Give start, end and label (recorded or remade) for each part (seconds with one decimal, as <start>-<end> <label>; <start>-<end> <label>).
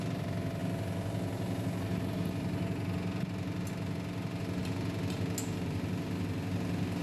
0.0-7.0 recorded